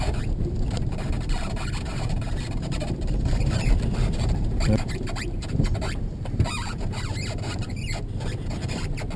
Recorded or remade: remade